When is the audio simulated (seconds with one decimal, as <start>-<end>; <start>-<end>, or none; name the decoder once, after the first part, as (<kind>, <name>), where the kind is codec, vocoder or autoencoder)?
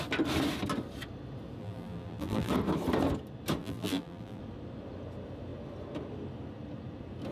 1.6-2.5 (vocoder, BigVGAN v2); 3.6-4.4